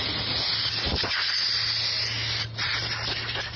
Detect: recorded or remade recorded